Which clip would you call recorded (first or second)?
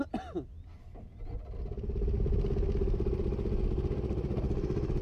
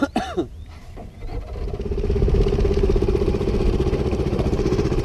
first